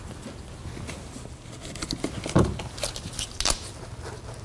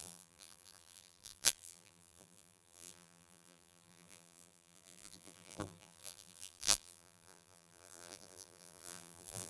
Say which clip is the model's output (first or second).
second